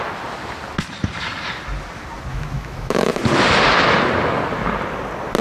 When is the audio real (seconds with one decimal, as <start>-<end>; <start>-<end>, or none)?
0.0-2.3; 3.2-5.4